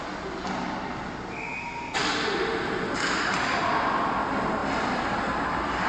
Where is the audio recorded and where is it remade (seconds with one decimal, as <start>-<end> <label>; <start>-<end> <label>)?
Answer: 0.0-5.9 recorded